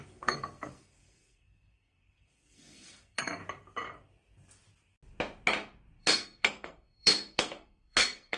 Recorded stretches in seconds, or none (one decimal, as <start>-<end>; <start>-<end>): 3.4-6.0